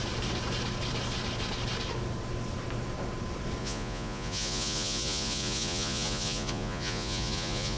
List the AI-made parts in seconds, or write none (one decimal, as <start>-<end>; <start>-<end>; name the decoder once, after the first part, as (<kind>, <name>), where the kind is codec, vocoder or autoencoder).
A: 3.6-7.8 (vocoder, Vocos)